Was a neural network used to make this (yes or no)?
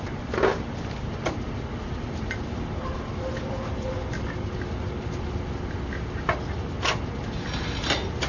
no